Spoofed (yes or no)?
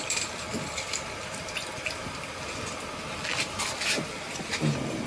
no